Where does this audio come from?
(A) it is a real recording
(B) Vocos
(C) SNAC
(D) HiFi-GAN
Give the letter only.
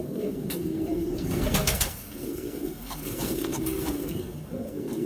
C